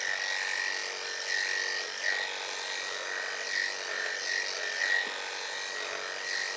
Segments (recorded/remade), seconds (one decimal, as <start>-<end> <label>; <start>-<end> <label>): 0.0-6.6 recorded